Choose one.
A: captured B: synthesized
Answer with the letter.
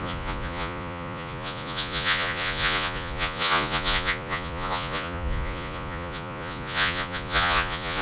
B